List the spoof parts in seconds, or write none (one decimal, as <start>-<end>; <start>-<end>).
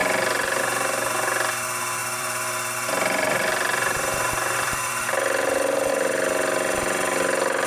2.0-5.9